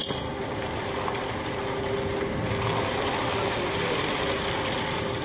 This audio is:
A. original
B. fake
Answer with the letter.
A